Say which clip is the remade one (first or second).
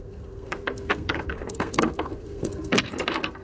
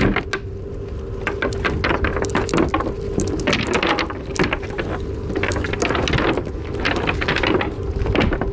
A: first